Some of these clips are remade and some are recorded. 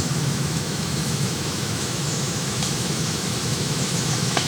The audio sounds remade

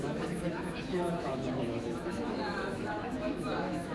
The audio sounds remade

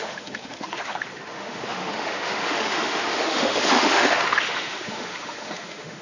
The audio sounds remade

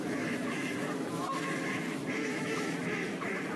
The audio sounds remade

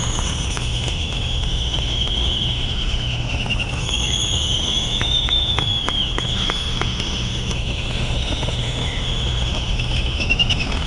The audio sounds remade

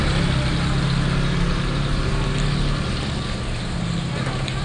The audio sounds recorded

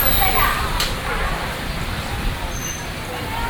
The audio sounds recorded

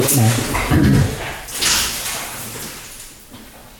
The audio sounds recorded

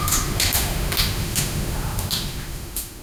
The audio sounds remade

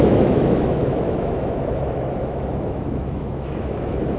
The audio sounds remade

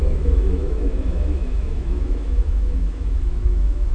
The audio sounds remade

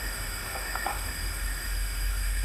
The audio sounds remade